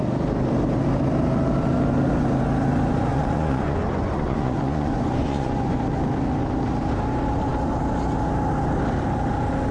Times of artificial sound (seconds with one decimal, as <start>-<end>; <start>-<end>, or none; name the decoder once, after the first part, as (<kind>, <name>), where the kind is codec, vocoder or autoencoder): 3.1-5.8 (vocoder, Vocos)